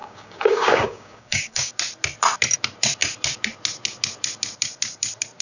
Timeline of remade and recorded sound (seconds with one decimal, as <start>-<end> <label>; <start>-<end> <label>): 0.0-1.7 remade; 1.7-5.4 recorded